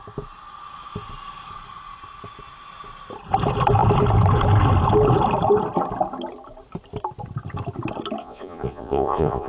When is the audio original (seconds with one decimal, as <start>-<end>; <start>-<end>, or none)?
0.0-8.2